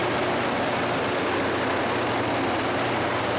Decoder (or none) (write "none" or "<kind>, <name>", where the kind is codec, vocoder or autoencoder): none